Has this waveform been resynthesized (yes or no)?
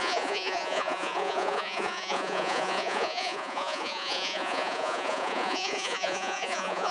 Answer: yes